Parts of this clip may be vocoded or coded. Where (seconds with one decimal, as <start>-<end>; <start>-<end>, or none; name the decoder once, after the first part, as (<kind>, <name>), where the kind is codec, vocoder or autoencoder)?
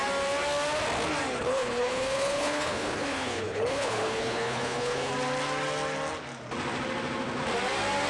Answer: 1.5-5.1 (codec, HILCodec)